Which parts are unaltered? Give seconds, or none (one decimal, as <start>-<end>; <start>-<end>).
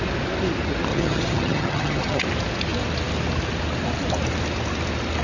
0.0-0.9; 2.2-5.2